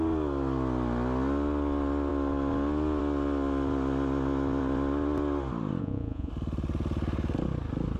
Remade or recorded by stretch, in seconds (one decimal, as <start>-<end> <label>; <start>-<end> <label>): 0.0-5.8 recorded; 5.8-6.3 remade; 6.3-8.0 recorded